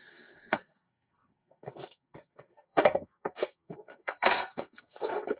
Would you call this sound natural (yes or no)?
no